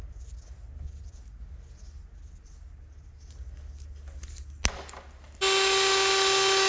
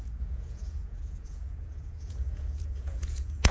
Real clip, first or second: first